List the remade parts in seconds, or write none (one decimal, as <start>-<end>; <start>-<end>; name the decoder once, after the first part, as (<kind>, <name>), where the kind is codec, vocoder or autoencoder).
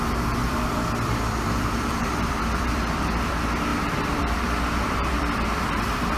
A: 0.4-3.3 (vocoder, BigVGAN v2); 3.7-5.8